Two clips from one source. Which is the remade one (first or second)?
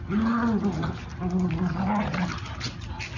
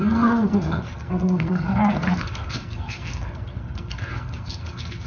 second